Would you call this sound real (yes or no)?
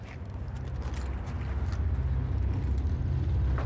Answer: yes